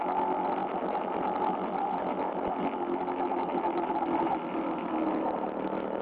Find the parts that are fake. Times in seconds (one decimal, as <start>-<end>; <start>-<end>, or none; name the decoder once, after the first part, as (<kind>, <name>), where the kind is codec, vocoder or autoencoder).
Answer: none